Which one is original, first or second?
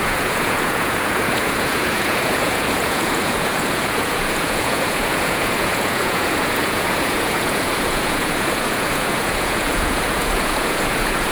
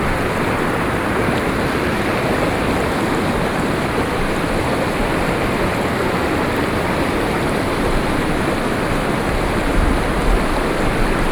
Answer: second